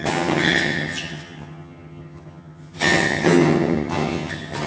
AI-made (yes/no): yes